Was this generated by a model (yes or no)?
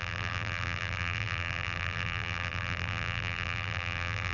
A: yes